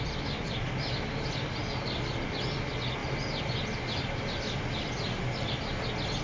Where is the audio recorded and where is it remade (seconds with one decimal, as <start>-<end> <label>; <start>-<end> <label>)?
0.0-6.2 recorded